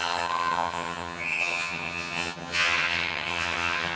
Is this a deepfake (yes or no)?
yes